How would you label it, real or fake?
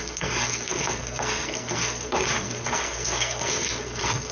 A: fake